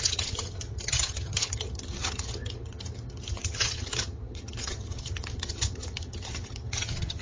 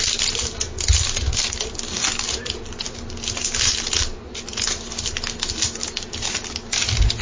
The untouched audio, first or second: second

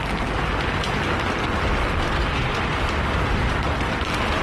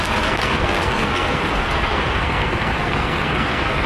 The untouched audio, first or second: first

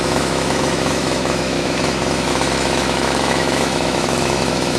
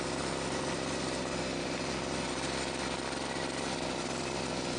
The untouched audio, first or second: second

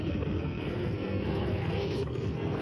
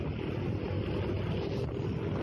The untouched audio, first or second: second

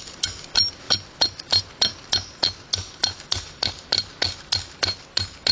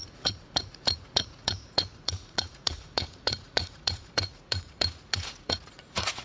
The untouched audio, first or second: first